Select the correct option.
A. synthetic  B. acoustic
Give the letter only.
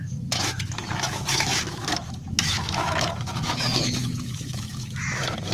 A